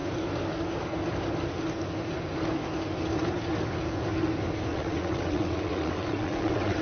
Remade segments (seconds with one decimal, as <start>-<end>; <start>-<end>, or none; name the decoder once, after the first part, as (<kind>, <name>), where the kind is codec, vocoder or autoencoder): 4.7-6.8 (vocoder, WaveNeXt)